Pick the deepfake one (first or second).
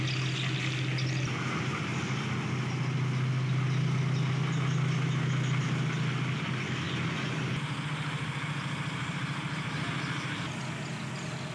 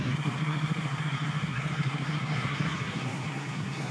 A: second